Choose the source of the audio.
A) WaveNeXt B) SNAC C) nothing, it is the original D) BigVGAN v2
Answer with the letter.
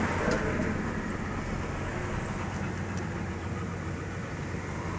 C